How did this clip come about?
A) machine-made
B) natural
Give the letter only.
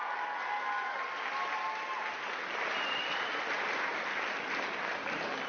B